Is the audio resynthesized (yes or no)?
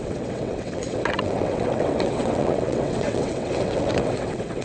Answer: yes